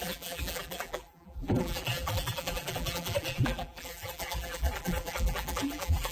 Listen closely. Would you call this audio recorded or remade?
remade